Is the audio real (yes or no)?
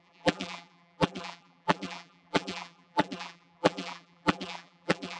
no